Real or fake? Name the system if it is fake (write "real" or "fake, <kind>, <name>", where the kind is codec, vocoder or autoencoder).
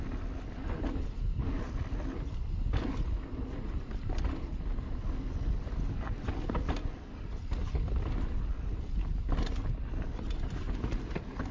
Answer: real